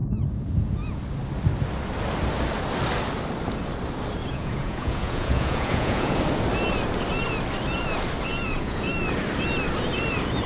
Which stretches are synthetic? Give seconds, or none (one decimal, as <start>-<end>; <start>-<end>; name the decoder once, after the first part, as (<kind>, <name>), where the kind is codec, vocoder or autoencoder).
0.0-1.0 (vocoder, Vocos); 4.2-6.2; 8.3-8.9